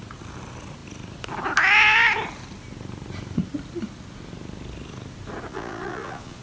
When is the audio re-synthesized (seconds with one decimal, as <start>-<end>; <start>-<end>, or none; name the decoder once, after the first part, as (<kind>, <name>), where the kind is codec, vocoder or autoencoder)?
5.5-6.4 (vocoder, Vocos)